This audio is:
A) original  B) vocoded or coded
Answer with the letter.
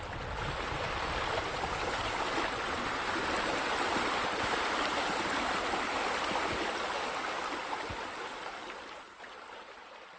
A